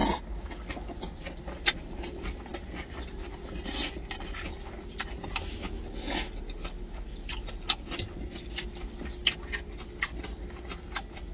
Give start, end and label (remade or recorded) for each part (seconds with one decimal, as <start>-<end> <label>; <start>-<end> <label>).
0.0-11.3 recorded